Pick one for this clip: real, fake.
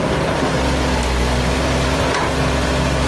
real